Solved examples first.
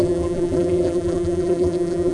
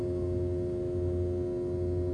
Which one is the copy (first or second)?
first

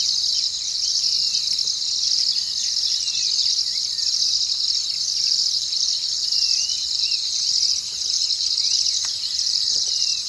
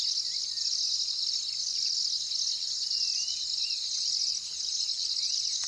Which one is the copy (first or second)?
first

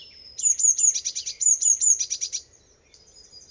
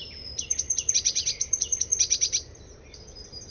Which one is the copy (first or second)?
second